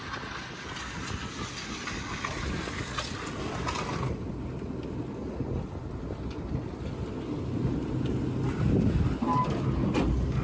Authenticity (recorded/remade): recorded